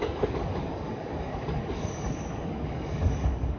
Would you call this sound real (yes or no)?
no